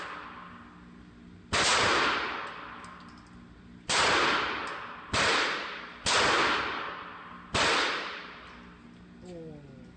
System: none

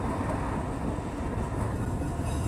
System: none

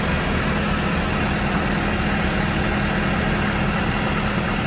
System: none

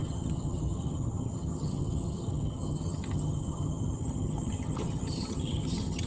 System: vocoder, HiFi-GAN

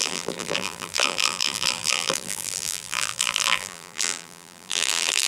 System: vocoder, BigVGAN v2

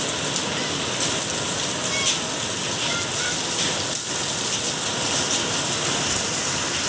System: none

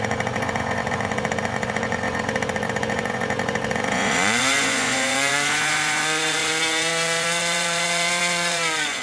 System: vocoder, Vocos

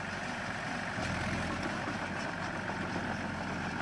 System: none